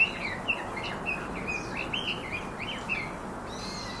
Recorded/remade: recorded